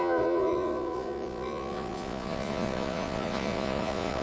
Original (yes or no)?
no